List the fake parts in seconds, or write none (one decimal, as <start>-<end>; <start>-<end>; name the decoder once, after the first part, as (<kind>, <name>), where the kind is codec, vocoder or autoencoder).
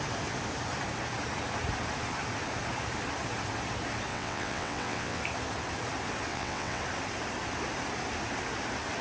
4.1-5.2 (vocoder, WaveNeXt); 6.3-6.8